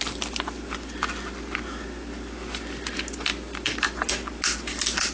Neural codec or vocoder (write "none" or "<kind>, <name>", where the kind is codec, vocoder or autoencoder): none